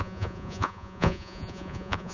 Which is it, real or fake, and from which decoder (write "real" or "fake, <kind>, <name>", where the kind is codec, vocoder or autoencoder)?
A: fake, vocoder, Vocos